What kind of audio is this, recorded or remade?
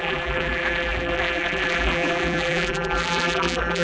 remade